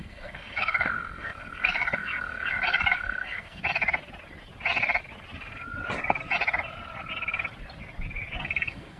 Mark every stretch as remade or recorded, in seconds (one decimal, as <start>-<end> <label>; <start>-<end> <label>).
0.0-3.6 remade; 3.6-8.4 recorded; 8.4-9.0 remade